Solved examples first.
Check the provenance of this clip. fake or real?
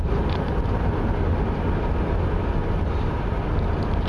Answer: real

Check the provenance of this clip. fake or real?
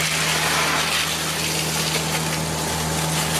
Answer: real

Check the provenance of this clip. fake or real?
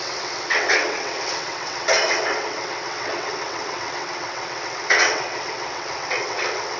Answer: fake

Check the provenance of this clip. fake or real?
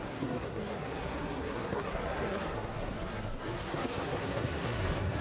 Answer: fake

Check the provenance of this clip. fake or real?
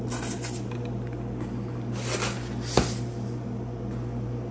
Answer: real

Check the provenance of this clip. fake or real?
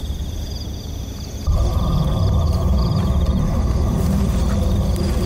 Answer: fake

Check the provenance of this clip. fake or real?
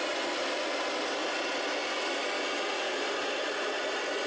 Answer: real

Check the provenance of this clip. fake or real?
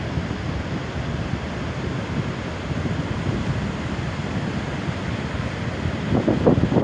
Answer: real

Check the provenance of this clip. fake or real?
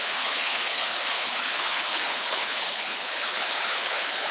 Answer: fake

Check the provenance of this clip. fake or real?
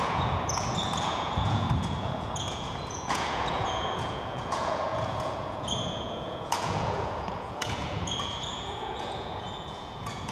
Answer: fake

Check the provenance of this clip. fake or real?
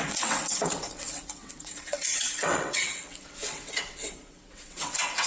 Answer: fake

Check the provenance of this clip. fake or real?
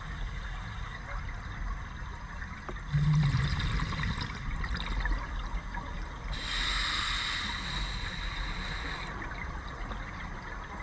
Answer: real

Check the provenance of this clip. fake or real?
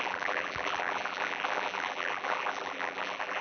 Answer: fake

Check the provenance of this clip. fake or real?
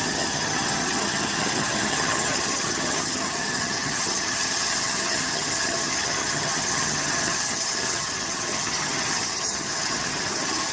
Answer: fake